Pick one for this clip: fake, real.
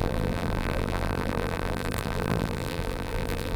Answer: fake